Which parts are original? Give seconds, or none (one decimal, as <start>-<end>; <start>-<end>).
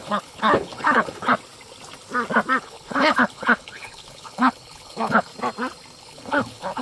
1.3-2.6; 5.3-6.0